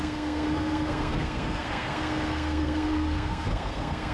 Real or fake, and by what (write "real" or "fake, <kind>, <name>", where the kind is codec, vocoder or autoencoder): fake, codec, SNAC